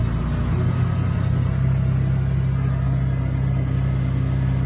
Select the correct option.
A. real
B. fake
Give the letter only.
A